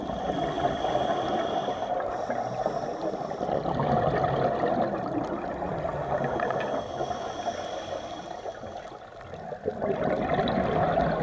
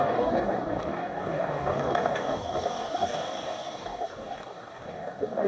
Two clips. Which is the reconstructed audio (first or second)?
second